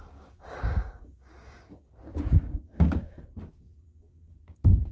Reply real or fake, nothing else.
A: fake